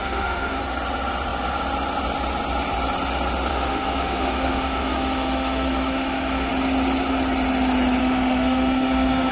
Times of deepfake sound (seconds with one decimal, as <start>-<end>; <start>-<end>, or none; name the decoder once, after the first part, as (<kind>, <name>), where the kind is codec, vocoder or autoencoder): 0.0-0.6 (autoencoder, DAC-VAE); 3.5-6.5; 8.0-9.3